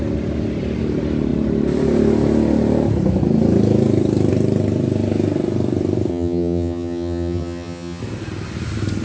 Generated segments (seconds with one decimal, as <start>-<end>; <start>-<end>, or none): 6.1-8.0